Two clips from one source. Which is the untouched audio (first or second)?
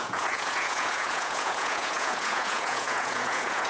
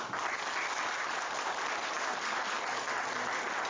second